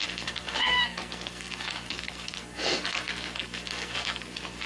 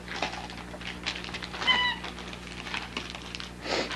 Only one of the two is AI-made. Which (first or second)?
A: first